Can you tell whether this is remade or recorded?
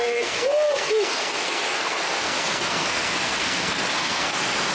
remade